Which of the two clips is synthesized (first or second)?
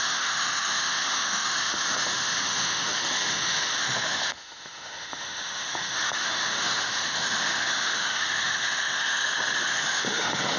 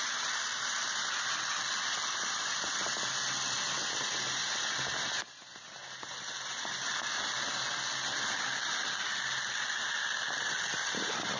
first